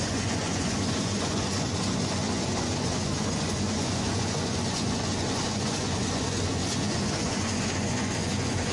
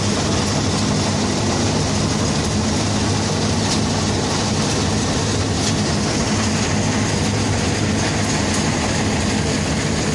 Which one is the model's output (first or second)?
first